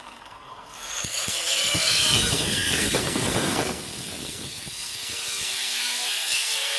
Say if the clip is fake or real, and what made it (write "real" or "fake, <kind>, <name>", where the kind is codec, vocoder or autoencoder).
fake, codec, SNAC